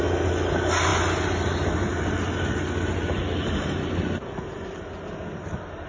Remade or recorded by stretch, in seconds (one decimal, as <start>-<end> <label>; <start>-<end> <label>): 0.0-5.9 recorded

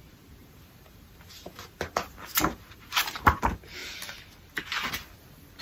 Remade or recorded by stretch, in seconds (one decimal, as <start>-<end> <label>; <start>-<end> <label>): 0.0-0.4 recorded; 0.4-3.4 remade; 3.4-5.6 recorded

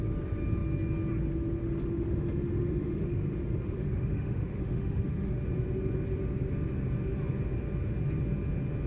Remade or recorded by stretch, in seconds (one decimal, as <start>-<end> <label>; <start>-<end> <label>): 0.0-1.6 recorded; 1.6-5.4 remade; 5.4-8.9 recorded